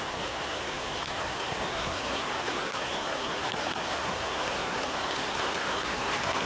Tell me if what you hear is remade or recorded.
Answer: remade